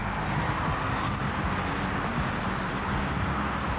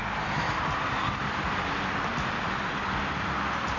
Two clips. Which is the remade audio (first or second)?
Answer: second